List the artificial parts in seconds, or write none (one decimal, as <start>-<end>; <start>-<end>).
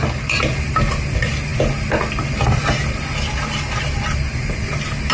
none